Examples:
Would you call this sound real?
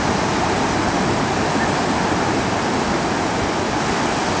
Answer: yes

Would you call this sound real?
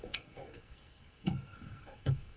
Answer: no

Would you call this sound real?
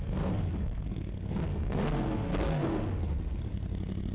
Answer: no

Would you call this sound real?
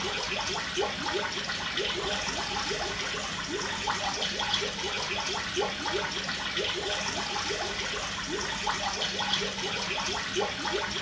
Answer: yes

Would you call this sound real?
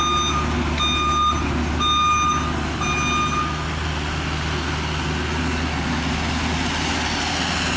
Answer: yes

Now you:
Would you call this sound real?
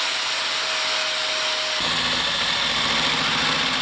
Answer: yes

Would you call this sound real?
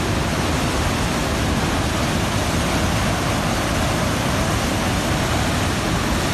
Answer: yes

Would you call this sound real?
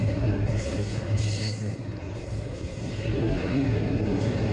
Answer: no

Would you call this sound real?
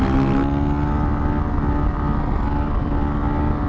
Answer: yes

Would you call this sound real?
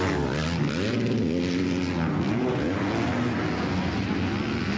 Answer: yes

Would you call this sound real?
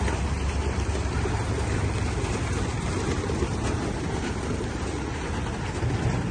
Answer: yes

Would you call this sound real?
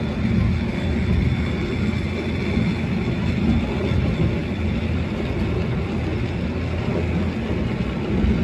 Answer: yes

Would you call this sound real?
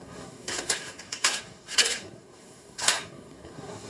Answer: no